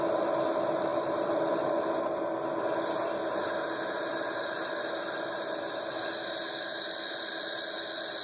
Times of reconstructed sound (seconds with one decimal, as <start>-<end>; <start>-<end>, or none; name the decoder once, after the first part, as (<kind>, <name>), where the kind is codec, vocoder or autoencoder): 0.9-1.5 (vocoder, BigVGAN v2)